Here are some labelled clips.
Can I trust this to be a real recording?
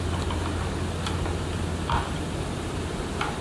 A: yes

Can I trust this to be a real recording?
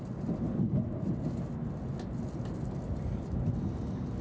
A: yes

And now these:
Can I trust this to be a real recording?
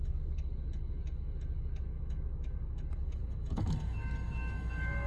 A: no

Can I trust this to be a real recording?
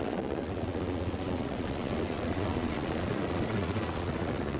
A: no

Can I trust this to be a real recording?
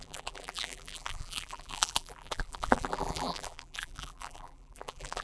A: no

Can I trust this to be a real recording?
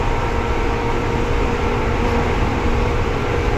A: no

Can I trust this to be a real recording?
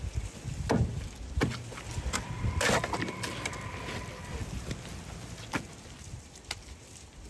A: yes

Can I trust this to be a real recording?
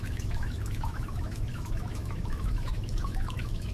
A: no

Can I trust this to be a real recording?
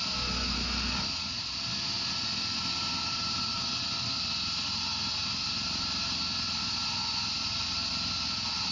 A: yes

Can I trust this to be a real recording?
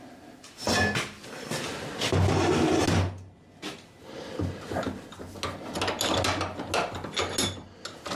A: yes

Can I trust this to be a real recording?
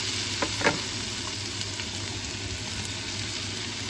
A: yes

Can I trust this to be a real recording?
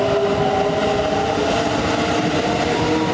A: yes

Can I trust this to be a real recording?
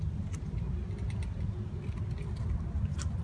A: yes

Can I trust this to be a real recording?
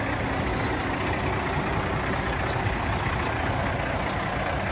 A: yes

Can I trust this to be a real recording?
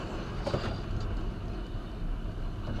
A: yes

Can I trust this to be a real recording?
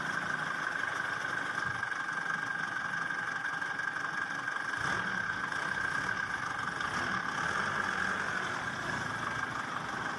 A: yes